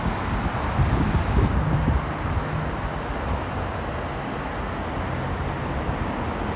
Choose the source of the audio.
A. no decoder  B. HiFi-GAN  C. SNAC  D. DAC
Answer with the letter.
A